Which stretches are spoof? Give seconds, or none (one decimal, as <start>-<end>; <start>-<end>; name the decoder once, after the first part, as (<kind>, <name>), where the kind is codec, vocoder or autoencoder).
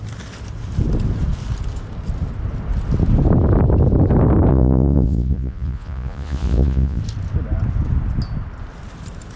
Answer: 4.5-7.0 (vocoder, Vocos)